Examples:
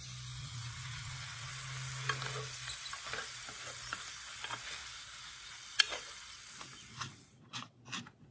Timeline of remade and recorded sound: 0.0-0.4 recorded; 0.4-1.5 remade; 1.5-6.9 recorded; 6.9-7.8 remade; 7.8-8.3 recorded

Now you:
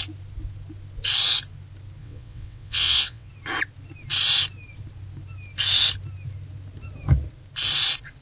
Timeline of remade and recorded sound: 0.0-2.0 recorded; 2.0-3.3 remade; 3.3-8.2 recorded

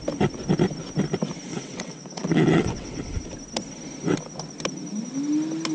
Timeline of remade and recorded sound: 0.0-1.5 recorded; 1.5-3.2 remade; 3.2-5.7 recorded

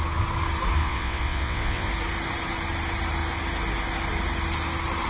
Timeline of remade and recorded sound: 0.0-0.8 recorded; 0.8-1.9 remade; 1.9-5.1 recorded

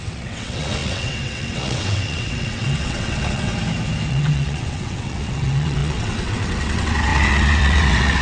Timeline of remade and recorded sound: 0.0-3.5 remade; 3.5-4.1 recorded; 4.1-8.2 remade

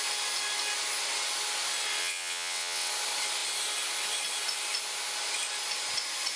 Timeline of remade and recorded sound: 0.0-2.0 recorded; 2.0-2.9 remade; 2.9-6.4 recorded

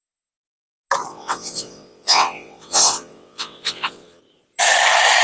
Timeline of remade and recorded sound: 0.0-1.1 recorded; 1.1-4.2 remade; 4.2-5.2 recorded

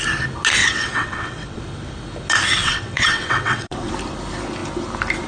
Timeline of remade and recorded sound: 0.0-0.6 recorded; 0.6-1.6 remade; 1.6-2.6 recorded; 2.6-3.9 remade; 3.9-5.3 recorded